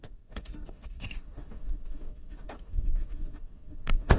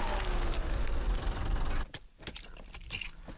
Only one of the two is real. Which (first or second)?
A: second